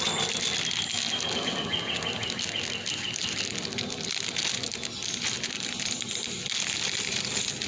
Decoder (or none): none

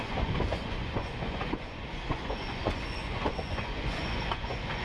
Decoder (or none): vocoder, Vocos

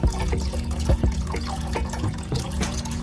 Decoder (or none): vocoder, Vocos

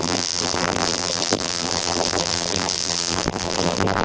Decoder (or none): vocoder, BigVGAN v2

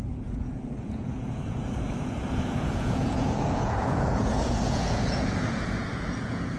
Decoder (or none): vocoder, Vocos